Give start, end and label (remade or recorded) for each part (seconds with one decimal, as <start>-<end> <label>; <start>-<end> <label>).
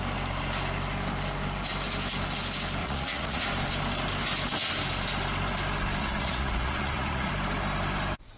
0.0-2.8 recorded; 2.8-3.4 remade; 3.4-6.0 recorded; 6.0-7.3 remade; 7.3-8.4 recorded